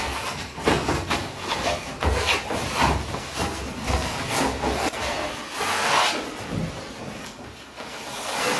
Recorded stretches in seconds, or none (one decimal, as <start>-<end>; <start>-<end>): 2.3-3.1; 6.0-7.0

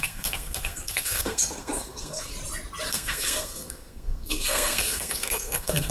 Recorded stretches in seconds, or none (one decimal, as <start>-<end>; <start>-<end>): 2.3-2.9

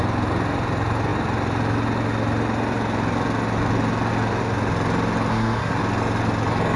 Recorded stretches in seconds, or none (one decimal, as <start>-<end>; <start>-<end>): 0.0-5.3; 5.8-6.8

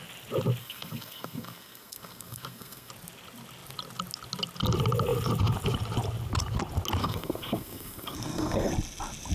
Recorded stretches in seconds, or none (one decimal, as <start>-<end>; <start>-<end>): 0.0-0.6; 2.9-7.0; 8.7-9.3

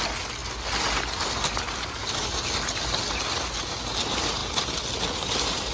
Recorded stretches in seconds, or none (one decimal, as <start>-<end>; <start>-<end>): 0.0-5.7

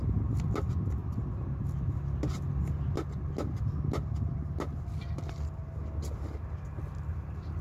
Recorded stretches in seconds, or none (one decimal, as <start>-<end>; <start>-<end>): 0.0-7.6

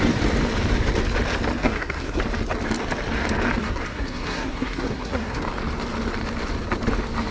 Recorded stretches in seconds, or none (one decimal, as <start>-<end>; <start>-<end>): 0.0-1.6; 2.2-3.6; 5.4-7.3

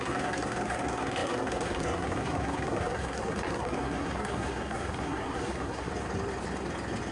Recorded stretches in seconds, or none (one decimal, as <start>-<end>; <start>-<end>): 5.9-7.1